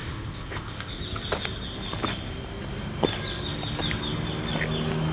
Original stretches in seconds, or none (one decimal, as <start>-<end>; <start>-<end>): 1.0-5.1